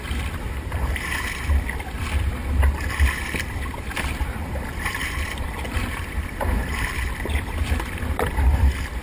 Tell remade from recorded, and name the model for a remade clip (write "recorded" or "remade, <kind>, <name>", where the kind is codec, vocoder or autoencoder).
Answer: remade, vocoder, BigVGAN v2